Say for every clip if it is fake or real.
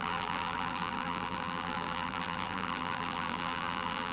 fake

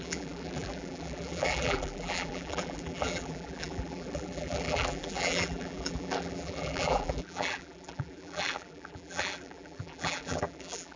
fake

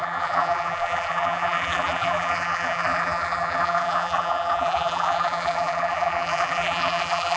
fake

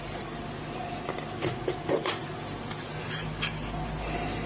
real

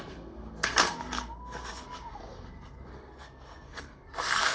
fake